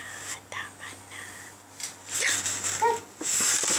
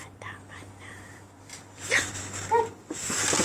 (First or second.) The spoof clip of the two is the second